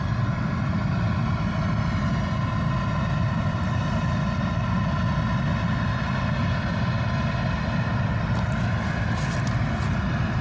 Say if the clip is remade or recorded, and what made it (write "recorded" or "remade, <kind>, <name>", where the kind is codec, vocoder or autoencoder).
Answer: recorded